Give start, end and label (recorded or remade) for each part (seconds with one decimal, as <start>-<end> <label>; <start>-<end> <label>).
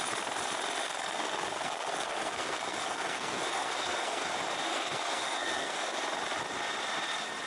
0.0-0.8 recorded; 0.8-4.3 remade; 4.3-4.7 recorded; 4.7-6.0 remade; 6.0-7.5 recorded